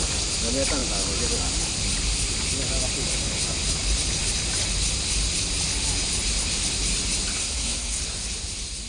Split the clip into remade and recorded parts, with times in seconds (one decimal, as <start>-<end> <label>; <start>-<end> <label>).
0.0-7.4 recorded; 7.4-8.0 remade; 8.0-8.9 recorded